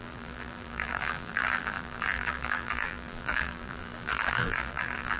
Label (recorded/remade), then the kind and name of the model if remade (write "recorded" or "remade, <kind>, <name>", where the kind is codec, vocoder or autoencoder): remade, vocoder, BigVGAN v2